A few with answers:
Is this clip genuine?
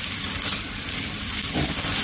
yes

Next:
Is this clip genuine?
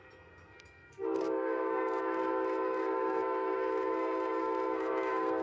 no